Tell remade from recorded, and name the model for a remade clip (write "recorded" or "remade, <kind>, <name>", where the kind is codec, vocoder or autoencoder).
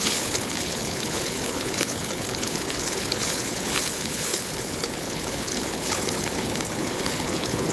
remade, codec, HILCodec